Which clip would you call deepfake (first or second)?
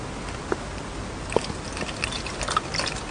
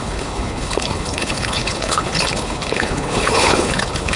second